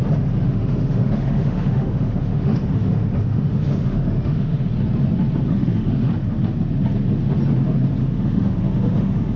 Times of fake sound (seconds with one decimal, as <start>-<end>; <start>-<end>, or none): 0.4-4.7; 5.5-6.1; 8.0-9.4